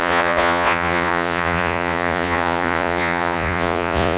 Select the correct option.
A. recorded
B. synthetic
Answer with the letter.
B